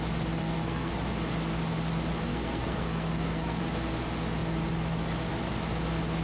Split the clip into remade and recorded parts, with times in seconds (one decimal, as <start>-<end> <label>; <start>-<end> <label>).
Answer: 0.0-0.4 recorded; 0.4-0.9 remade; 0.9-2.3 recorded; 2.3-3.6 remade; 3.6-6.2 recorded

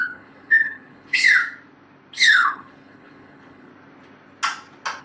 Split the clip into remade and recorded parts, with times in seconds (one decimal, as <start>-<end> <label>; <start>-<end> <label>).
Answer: 0.0-1.4 remade; 1.4-2.2 recorded; 2.2-3.7 remade; 3.7-5.0 recorded

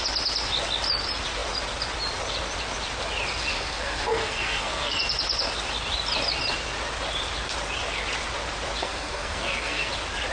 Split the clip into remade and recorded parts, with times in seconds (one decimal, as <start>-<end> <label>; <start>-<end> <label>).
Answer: 0.0-3.5 recorded; 3.5-5.0 remade; 5.0-8.8 recorded; 8.8-9.9 remade; 9.9-10.3 recorded

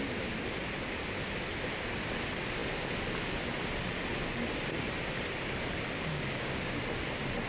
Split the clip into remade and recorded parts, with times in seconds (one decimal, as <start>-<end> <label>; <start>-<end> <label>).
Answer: 0.0-6.1 recorded; 6.1-6.8 remade; 6.8-7.5 recorded

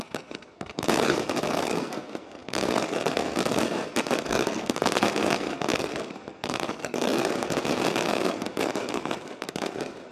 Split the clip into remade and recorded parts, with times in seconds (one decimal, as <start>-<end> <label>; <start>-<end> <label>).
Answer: 0.0-10.1 remade

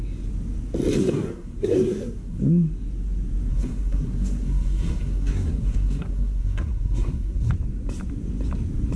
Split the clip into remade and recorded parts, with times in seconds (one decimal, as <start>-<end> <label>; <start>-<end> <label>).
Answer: 0.0-1.0 recorded; 1.0-2.4 remade; 2.4-3.5 recorded; 3.5-7.5 remade; 7.5-9.0 recorded

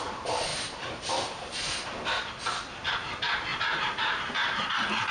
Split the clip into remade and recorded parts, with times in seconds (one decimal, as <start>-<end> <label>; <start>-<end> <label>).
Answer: 0.0-0.5 recorded; 0.5-2.3 remade; 2.3-3.5 recorded; 3.5-5.1 remade